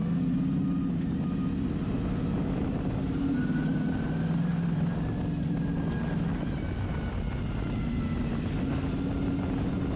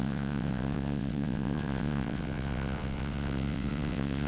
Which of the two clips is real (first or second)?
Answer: first